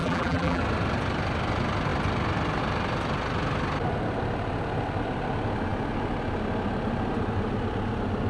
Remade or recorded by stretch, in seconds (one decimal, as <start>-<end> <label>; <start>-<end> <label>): 0.0-0.6 remade; 0.6-8.3 recorded